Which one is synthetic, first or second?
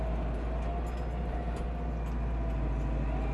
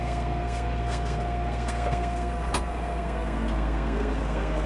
second